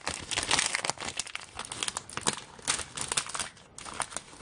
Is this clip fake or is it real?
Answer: real